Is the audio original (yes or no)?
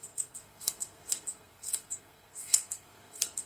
no